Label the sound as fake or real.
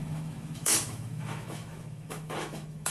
fake